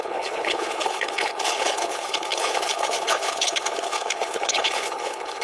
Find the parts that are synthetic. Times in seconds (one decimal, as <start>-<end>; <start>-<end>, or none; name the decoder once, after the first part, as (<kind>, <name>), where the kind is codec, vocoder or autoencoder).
0.0-5.4 (codec, HILCodec)